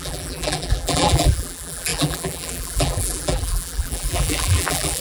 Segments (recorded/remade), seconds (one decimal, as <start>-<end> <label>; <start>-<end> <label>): 0.0-5.0 remade